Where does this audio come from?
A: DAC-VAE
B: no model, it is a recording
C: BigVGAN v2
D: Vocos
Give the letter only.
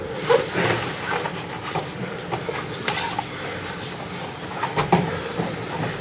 B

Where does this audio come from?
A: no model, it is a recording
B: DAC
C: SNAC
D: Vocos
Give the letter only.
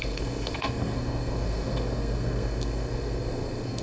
C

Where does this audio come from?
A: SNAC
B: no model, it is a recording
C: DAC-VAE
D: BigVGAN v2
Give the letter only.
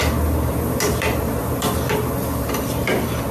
B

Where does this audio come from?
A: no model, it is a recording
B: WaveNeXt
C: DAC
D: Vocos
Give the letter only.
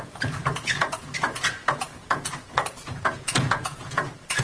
D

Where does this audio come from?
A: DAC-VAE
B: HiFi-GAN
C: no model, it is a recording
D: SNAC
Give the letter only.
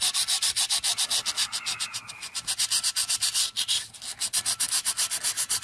C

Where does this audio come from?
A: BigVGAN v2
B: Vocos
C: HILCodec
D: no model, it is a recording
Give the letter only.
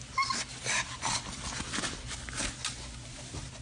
D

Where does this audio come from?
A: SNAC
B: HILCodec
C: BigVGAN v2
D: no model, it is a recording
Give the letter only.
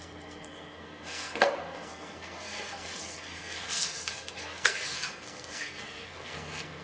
A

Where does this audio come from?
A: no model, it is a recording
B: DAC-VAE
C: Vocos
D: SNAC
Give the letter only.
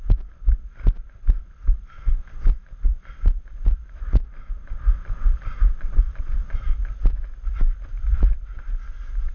A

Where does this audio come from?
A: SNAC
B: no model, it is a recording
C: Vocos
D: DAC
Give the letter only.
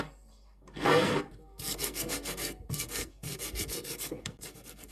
A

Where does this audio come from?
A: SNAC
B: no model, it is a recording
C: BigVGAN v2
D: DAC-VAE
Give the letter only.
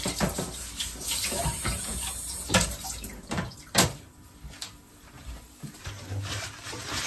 C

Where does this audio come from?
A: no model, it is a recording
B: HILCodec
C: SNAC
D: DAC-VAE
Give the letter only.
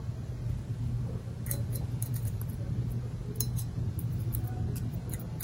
A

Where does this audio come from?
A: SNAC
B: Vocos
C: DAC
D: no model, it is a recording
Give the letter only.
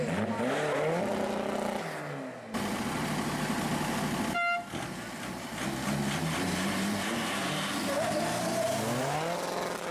D